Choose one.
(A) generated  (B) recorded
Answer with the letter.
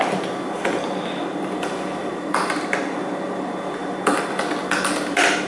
B